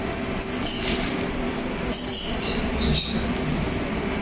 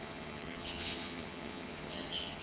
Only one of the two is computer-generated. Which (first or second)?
second